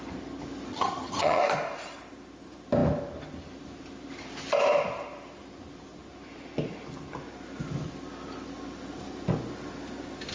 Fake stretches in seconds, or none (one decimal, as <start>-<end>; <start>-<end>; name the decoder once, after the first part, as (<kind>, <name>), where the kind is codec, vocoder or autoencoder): 0.7-1.4 (vocoder, HiFi-GAN)